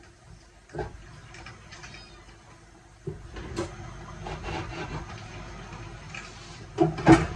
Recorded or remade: recorded